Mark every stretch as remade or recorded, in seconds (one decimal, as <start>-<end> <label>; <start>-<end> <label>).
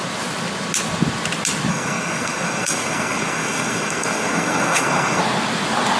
0.0-1.7 recorded; 1.7-5.2 remade; 5.2-6.0 recorded